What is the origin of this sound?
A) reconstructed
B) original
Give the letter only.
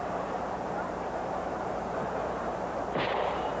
A